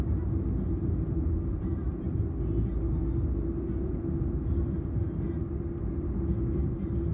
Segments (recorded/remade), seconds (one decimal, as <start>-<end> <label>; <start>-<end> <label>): 0.0-7.1 recorded